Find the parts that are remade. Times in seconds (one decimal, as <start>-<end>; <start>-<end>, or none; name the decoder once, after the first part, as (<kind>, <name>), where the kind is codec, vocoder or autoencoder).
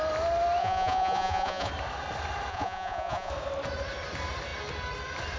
0.6-1.7 (vocoder, Vocos); 2.5-3.3